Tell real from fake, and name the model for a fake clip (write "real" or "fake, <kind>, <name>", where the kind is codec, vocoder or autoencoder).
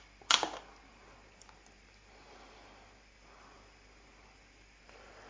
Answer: real